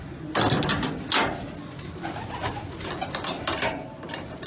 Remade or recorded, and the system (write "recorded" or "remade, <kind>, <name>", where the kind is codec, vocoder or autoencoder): recorded